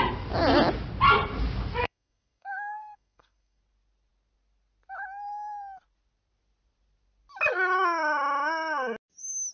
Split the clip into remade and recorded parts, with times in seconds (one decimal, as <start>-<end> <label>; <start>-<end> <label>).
0.0-1.8 recorded; 1.8-3.6 remade; 3.6-9.5 recorded